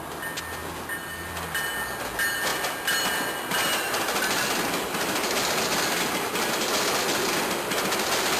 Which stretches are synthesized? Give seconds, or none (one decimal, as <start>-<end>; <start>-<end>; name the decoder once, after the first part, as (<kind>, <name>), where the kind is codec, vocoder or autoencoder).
none